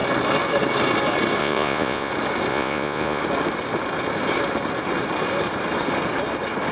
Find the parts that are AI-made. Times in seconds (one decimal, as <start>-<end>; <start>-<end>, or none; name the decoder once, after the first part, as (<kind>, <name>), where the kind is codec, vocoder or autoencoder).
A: 1.4-2.1 (vocoder, Vocos); 2.5-3.2